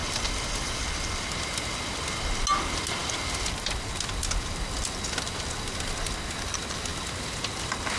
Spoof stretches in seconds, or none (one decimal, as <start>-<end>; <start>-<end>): 0.0-1.1